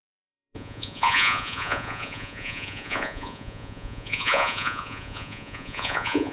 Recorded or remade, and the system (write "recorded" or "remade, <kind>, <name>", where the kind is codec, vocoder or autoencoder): remade, vocoder, Vocos